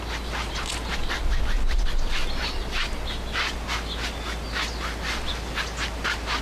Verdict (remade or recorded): recorded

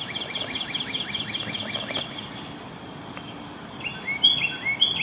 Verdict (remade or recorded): recorded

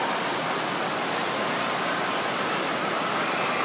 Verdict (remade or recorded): recorded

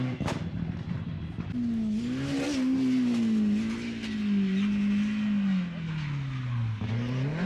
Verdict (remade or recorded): recorded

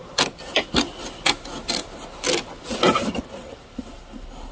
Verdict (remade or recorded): recorded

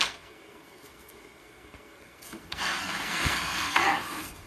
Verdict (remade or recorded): remade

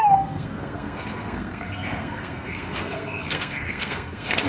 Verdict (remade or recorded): remade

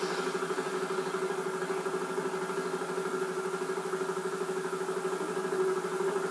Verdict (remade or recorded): recorded